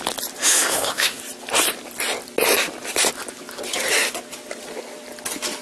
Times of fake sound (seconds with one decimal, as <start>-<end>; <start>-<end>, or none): 0.4-1.2